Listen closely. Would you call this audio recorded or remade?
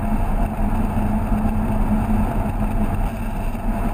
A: recorded